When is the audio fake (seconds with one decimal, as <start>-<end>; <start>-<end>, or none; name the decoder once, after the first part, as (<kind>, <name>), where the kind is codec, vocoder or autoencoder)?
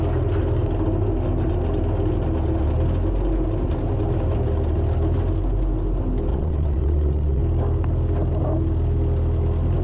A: 6.3-7.4 (vocoder, WaveNeXt)